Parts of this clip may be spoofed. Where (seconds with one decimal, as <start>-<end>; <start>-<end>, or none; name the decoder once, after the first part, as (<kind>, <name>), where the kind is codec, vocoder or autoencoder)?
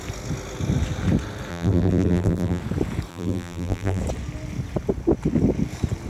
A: 1.5-2.6 (vocoder, BigVGAN v2); 3.1-4.0